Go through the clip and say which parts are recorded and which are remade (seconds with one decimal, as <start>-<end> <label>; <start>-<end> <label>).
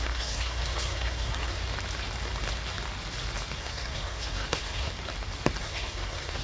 0.0-1.6 remade; 1.6-3.6 recorded; 3.6-4.9 remade; 4.9-5.6 recorded; 5.6-6.4 remade